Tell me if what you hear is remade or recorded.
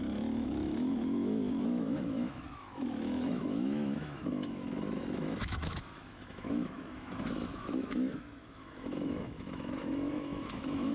remade